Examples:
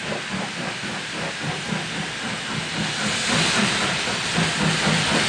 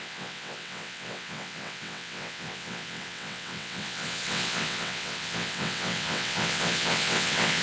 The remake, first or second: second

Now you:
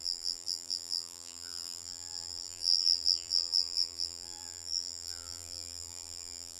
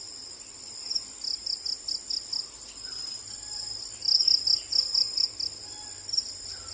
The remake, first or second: first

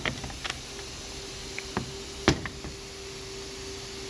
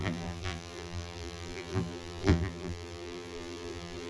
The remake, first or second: second